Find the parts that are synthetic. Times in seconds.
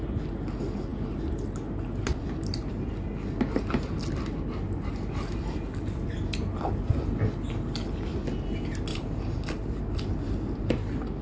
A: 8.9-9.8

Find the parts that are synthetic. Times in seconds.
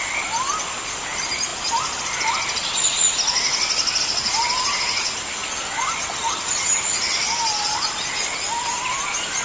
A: none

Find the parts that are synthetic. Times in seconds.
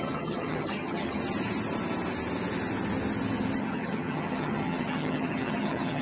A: 0.0-1.2; 3.6-6.0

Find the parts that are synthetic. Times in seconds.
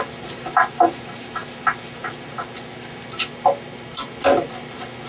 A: none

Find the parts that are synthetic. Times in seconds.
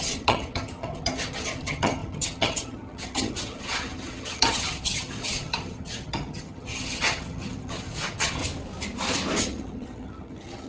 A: 0.0-8.4; 9.4-10.7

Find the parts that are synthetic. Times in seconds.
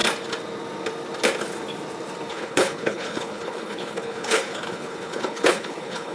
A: 2.3-6.1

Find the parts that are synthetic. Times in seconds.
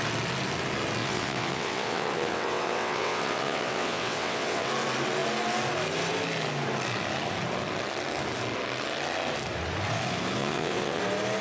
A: 1.0-4.7; 10.4-11.0